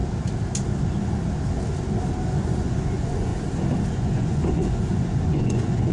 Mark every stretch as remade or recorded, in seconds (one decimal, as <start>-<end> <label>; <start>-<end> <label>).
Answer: 0.0-2.3 recorded; 2.3-3.3 remade; 3.3-3.9 recorded; 3.9-5.9 remade